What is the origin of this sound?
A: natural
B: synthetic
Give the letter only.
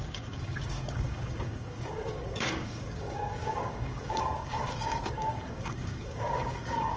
B